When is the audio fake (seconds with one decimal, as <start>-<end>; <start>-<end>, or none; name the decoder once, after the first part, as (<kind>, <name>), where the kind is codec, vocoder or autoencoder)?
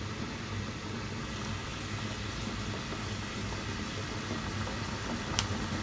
none